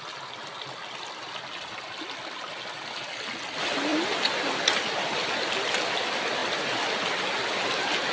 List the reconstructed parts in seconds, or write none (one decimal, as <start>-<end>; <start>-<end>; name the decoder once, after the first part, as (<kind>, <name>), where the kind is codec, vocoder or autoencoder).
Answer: none